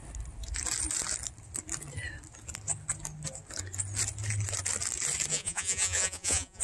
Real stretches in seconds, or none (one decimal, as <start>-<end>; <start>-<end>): 0.0-5.3